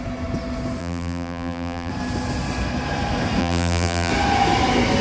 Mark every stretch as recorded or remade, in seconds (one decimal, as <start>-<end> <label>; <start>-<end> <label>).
0.0-0.8 recorded; 0.8-1.9 remade; 1.9-3.4 recorded; 3.4-4.1 remade; 4.1-5.0 recorded